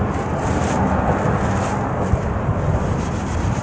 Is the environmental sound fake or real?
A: real